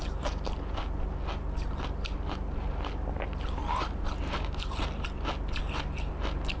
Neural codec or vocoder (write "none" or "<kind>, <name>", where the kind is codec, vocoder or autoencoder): none